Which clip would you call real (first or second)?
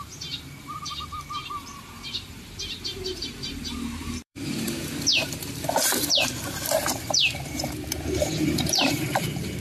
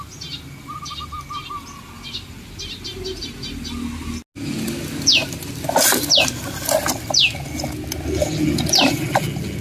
second